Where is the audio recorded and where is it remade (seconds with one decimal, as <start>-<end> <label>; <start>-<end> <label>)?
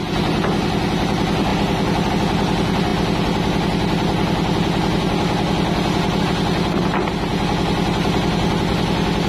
0.0-9.3 recorded